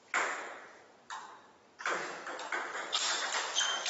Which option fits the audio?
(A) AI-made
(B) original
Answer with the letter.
B